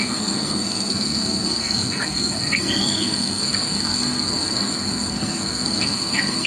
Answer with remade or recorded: remade